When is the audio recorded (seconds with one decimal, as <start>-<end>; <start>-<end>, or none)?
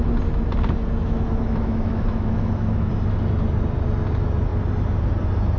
0.0-1.0; 2.9-5.6